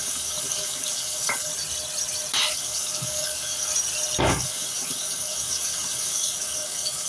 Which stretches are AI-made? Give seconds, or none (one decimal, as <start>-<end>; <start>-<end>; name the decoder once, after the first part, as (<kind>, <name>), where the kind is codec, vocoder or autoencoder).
0.0-1.5 (codec, DAC); 2.4-3.7; 4.2-7.1